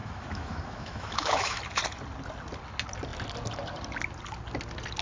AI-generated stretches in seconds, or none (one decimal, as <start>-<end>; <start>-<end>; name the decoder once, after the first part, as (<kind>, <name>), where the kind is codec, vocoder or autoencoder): 0.0-1.6 (autoencoder, DAC-VAE)